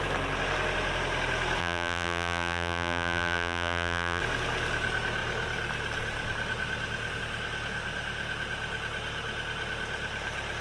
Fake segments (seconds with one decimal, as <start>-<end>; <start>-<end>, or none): 1.6-4.2